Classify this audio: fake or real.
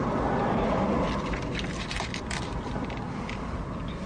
real